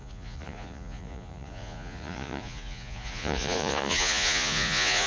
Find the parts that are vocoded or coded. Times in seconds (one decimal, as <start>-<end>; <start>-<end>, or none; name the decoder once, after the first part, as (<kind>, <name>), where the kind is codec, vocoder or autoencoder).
0.0-5.1 (vocoder, Vocos)